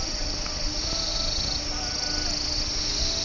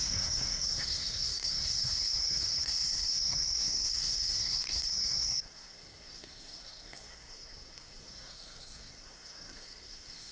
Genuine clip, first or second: first